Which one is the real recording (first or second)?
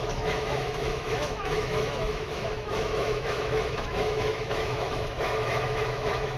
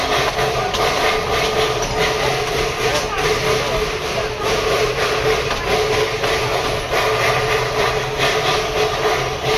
second